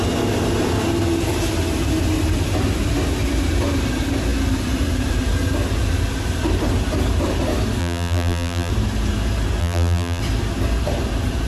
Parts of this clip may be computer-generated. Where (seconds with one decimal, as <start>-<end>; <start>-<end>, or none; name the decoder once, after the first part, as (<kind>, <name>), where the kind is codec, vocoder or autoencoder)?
7.8-8.7 (vocoder, BigVGAN v2); 9.6-10.2